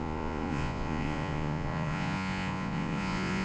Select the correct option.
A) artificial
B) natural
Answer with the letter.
A